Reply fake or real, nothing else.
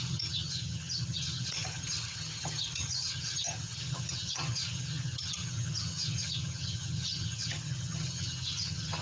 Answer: fake